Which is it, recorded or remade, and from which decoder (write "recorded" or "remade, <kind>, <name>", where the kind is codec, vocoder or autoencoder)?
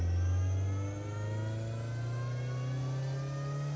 recorded